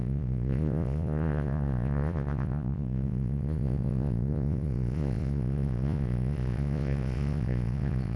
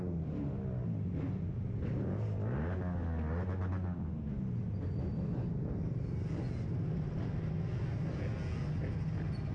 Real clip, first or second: second